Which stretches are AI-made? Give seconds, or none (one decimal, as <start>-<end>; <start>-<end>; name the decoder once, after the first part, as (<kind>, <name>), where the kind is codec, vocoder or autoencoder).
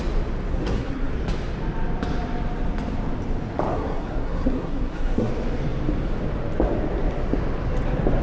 0.5-1.1 (codec, SNAC); 3.7-5.3